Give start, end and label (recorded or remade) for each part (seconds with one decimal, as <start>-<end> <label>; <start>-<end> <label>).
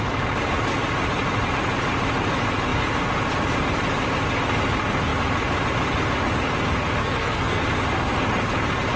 0.0-7.0 recorded; 7.0-7.6 remade; 7.6-9.0 recorded